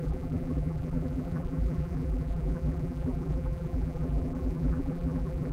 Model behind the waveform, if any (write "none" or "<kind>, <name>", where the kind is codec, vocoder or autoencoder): vocoder, BigVGAN v2